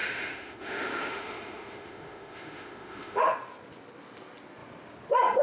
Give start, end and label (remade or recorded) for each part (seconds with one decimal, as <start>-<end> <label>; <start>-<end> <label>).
0.0-3.2 remade; 3.2-5.4 recorded